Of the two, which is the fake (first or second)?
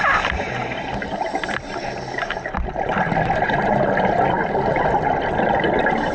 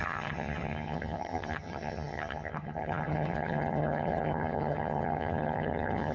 second